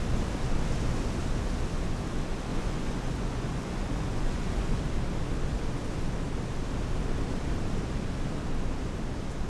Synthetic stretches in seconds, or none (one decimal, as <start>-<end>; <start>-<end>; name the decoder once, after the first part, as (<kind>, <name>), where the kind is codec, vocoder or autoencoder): 2.5-4.8 (vocoder, Vocos)